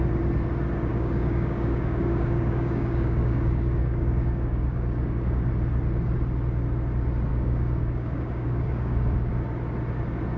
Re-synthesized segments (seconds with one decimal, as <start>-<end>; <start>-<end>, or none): 0.9-5.5; 7.3-9.3